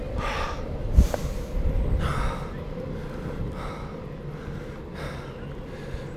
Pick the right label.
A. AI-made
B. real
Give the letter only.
B